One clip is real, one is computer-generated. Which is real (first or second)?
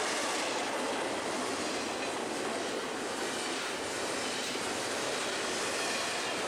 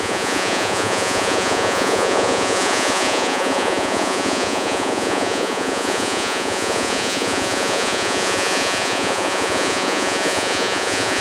first